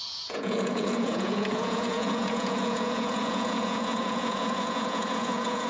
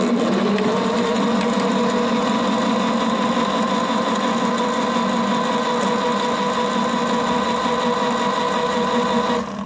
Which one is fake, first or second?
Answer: first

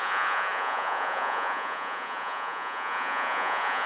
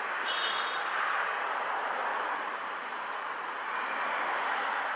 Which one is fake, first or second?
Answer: first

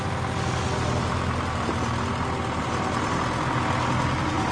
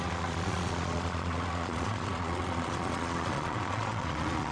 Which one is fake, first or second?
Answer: second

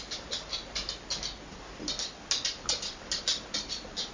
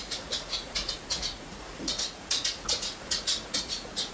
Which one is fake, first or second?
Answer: second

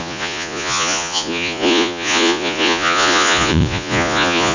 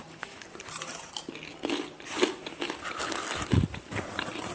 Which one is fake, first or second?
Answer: first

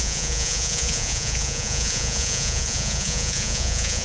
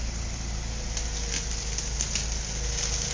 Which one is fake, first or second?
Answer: first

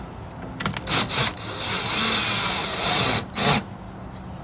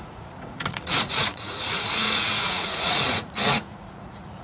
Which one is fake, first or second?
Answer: second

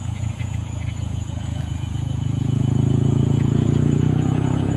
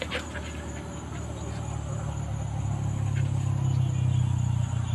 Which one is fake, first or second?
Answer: first